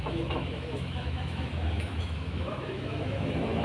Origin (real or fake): fake